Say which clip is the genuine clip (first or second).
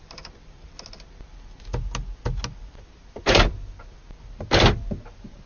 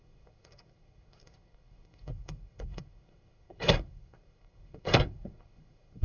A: first